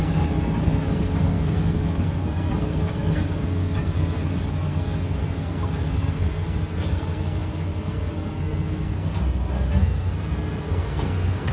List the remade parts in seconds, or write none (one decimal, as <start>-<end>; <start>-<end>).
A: 0.0-11.5